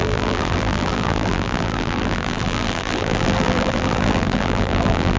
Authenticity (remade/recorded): remade